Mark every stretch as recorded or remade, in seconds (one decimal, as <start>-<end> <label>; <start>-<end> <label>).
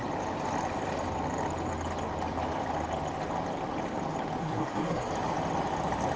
0.0-4.4 recorded; 4.4-5.1 remade; 5.1-6.2 recorded